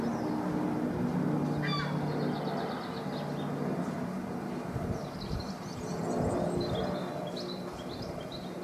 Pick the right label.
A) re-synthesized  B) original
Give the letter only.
B